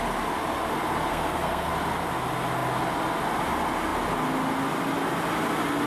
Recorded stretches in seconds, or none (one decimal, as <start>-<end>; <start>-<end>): 0.0-1.1; 1.7-5.9